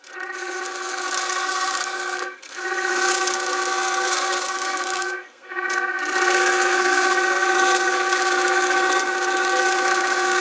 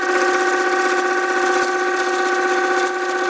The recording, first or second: second